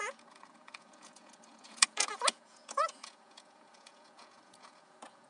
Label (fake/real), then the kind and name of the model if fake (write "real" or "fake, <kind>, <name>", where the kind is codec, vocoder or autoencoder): fake, vocoder, Vocos